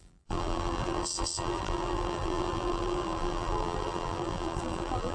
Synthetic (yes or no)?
yes